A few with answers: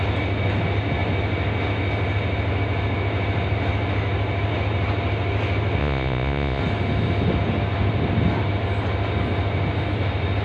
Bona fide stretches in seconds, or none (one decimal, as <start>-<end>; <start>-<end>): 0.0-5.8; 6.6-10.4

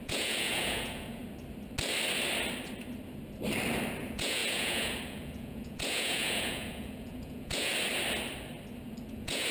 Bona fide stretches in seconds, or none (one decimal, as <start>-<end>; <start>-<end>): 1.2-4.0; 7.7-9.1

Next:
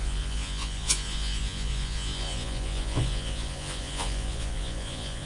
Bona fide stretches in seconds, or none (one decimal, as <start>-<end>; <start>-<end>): none